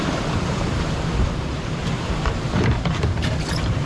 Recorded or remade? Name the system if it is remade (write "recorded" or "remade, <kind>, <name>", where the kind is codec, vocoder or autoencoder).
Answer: remade, vocoder, BigVGAN v2